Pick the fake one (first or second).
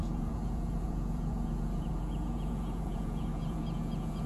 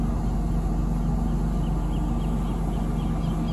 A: first